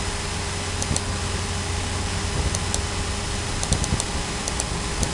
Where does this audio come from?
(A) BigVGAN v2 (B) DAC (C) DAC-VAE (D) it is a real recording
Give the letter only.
D